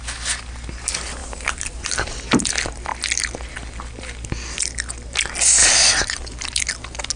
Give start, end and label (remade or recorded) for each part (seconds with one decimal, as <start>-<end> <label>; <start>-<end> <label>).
0.0-1.2 recorded; 1.2-2.5 remade; 2.5-5.6 recorded; 5.6-6.6 remade; 6.6-7.2 recorded